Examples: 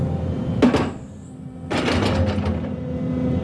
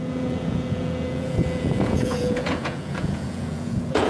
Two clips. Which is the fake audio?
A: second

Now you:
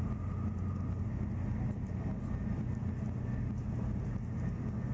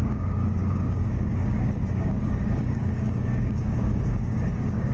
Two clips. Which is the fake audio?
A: second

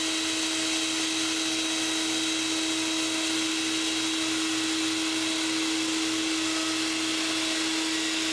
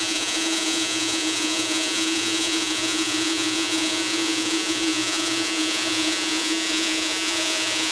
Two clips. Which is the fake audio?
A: second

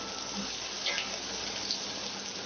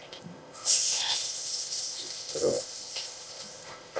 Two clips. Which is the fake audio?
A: second